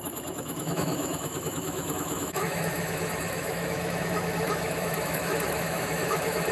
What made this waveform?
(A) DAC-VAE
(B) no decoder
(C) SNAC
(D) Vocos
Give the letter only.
A